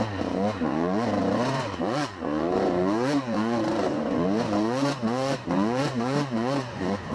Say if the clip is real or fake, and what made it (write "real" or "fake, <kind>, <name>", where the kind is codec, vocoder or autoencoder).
fake, vocoder, Vocos